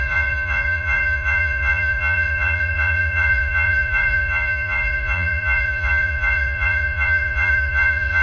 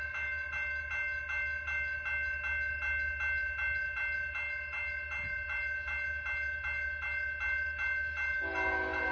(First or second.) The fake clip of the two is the first